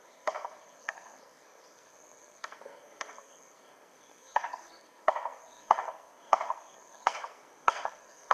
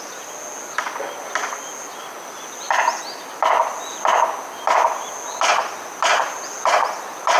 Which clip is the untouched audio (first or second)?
second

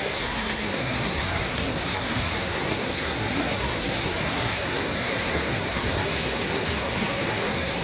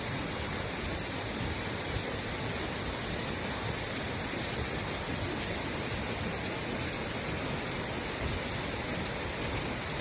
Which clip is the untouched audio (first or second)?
second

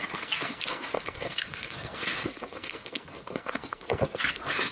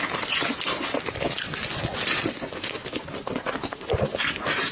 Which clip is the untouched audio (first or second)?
second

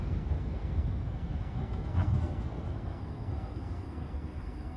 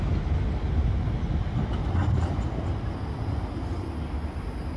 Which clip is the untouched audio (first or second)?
second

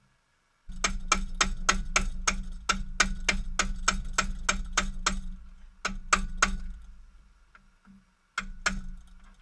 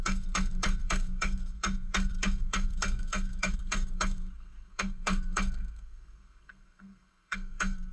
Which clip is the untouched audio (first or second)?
first